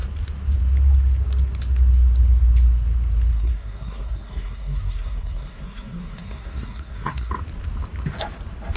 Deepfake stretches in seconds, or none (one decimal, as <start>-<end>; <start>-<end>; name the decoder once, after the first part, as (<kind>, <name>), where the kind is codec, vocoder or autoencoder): 3.3-7.3 (codec, SNAC)